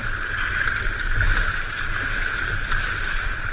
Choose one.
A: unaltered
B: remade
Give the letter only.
A